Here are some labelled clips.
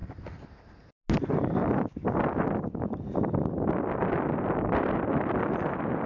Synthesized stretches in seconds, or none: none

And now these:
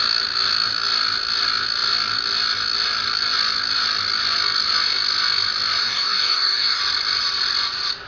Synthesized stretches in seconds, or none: 5.8-6.8 (codec, DAC)

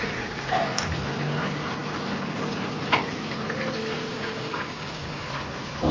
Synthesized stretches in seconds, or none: 4.1-5.3 (codec, DAC)

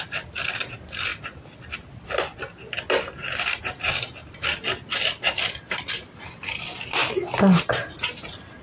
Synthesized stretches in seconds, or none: none

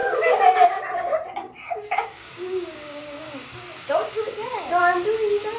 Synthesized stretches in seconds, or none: 0.0-0.8 (codec, DAC); 1.4-4.8